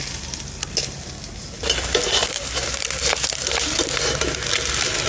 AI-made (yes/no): no